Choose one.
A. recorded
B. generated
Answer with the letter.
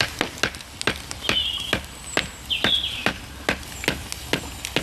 A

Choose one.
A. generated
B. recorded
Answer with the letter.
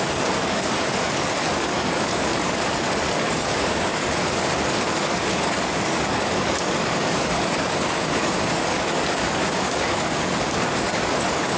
A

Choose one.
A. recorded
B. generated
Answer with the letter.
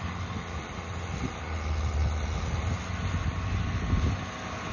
A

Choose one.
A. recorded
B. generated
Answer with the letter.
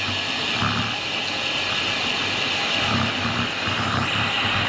A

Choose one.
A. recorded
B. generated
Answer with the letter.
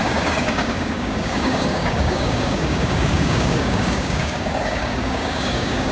B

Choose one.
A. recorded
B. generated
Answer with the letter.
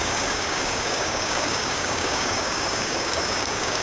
B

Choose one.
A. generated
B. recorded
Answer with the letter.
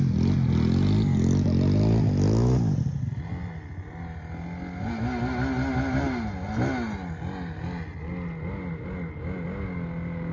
B